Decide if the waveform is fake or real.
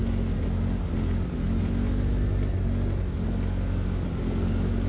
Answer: real